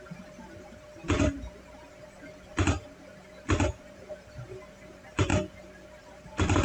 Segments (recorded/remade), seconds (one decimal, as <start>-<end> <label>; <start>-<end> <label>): 0.0-5.3 remade; 5.3-6.0 recorded; 6.0-6.6 remade